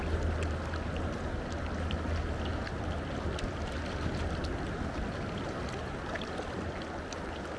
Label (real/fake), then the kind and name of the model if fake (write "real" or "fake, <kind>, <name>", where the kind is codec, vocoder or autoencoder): real